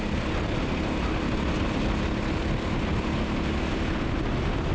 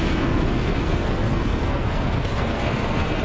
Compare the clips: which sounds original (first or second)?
first